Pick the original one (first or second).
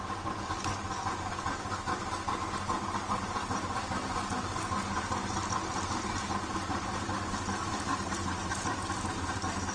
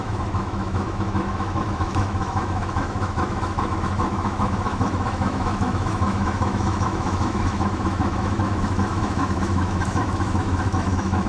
first